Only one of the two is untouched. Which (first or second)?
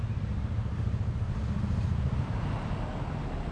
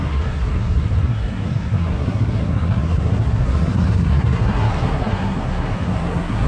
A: first